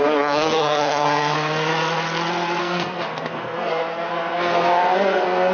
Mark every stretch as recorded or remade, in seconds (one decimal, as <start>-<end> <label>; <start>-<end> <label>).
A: 0.0-1.7 remade; 1.7-2.6 recorded; 2.6-5.5 remade